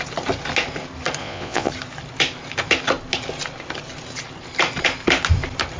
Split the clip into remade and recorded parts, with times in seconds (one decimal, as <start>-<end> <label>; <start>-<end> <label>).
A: 0.0-1.2 recorded; 1.2-1.7 remade; 1.7-5.8 recorded

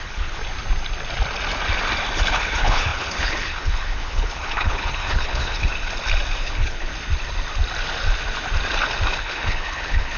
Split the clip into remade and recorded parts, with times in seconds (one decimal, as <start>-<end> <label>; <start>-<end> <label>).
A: 0.0-0.4 remade; 0.4-2.3 recorded; 2.3-5.7 remade; 5.7-6.4 recorded; 6.4-6.9 remade; 6.9-9.2 recorded; 9.2-10.2 remade

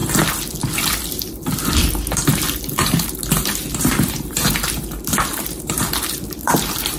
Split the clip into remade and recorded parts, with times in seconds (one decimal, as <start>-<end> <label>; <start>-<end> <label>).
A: 0.0-1.8 recorded; 1.8-7.0 remade

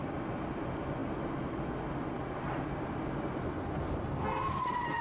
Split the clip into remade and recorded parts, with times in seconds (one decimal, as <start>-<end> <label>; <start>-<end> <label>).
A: 0.0-5.0 recorded

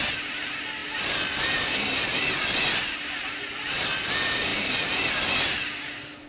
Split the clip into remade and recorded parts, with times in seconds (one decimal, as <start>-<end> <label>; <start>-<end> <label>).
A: 0.0-6.3 recorded

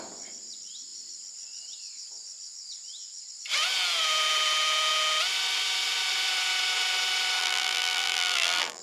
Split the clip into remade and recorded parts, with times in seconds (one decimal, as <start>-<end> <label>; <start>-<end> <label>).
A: 0.0-7.4 recorded; 7.4-8.8 remade

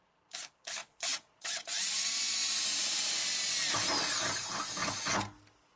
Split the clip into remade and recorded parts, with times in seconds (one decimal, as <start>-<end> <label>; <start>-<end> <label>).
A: 0.0-0.8 recorded; 0.8-2.2 remade; 2.2-5.8 recorded